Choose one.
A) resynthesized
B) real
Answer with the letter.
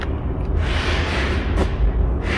B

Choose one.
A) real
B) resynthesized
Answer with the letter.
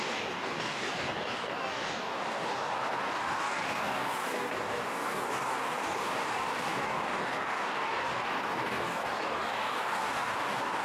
B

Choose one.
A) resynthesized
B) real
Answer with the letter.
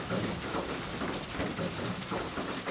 B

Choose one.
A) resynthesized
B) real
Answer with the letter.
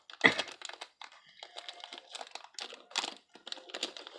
B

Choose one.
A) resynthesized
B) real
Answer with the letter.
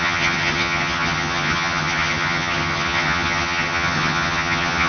A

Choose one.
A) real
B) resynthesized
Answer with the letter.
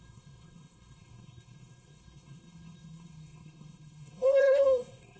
B